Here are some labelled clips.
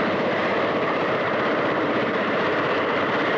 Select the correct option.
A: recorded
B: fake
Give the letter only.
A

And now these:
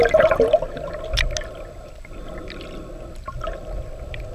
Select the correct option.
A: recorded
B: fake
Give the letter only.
A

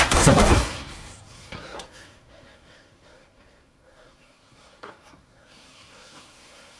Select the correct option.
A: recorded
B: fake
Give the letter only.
B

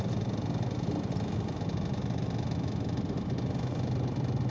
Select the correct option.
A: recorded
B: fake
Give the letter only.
A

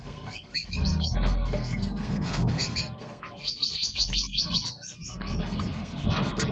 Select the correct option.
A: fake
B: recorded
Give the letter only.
A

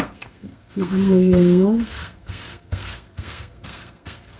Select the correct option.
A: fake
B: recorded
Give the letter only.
A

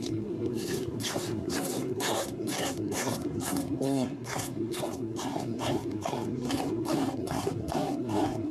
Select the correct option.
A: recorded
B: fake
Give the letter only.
B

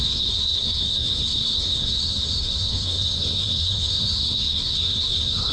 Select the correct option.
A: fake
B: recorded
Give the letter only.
A